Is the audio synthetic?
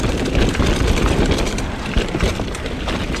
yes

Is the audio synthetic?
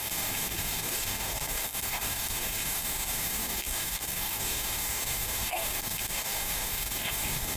yes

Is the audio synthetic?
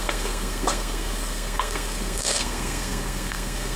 yes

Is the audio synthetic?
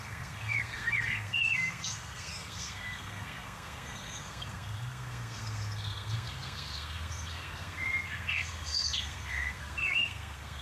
yes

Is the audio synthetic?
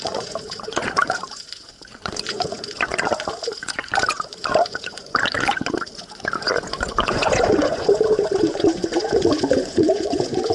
yes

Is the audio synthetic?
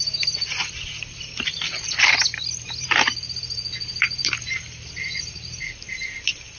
yes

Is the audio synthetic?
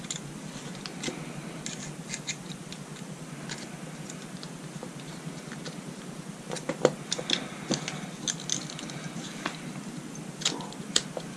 no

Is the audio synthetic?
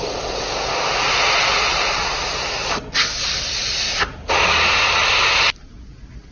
no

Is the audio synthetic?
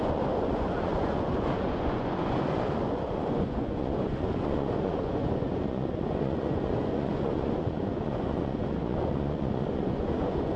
yes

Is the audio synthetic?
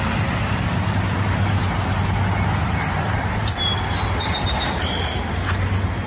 no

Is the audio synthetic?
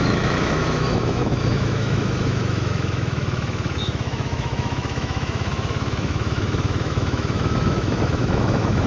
yes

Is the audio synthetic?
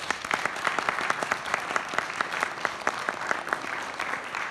no